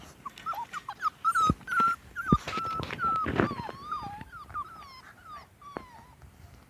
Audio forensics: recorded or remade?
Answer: recorded